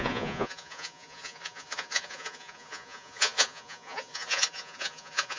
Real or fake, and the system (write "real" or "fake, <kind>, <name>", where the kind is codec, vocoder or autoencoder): fake, vocoder, Vocos